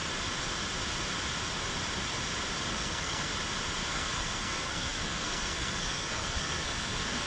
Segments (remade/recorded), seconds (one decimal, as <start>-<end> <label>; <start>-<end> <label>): 0.0-2.7 recorded; 2.7-3.3 remade; 3.3-3.9 recorded; 3.9-7.3 remade